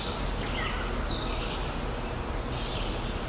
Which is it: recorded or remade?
recorded